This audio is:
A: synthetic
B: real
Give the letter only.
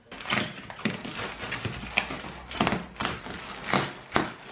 B